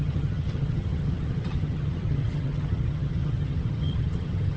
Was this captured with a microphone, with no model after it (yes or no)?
no